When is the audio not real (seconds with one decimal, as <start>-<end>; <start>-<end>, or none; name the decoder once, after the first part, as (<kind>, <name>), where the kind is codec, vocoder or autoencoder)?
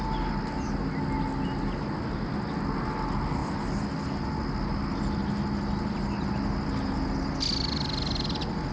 none